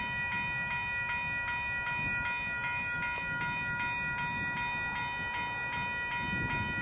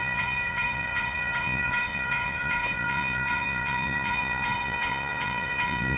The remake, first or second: second